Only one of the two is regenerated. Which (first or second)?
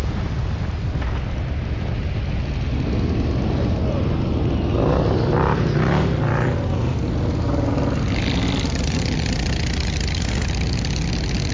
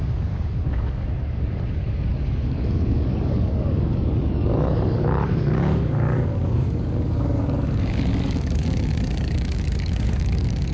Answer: second